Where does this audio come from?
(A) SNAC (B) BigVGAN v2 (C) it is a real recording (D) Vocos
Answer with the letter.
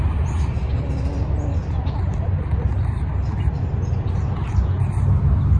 C